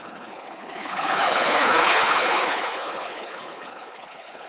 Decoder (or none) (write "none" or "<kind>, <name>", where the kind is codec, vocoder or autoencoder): codec, HILCodec